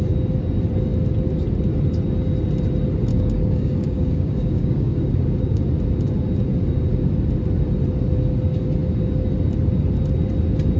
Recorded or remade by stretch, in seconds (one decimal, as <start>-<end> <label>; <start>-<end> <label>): 0.0-3.1 recorded; 3.1-5.6 remade; 5.6-10.8 recorded